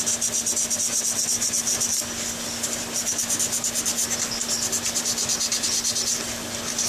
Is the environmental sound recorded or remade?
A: recorded